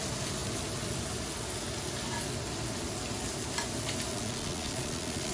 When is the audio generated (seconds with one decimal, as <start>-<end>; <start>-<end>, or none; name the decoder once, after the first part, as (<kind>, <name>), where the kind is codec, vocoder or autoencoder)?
4.1-5.3 (vocoder, Vocos)